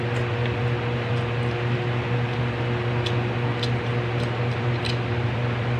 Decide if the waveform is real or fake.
real